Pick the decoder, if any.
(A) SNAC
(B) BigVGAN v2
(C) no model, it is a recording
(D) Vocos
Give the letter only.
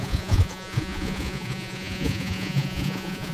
D